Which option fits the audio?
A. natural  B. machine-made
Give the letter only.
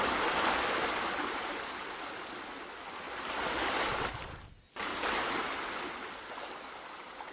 A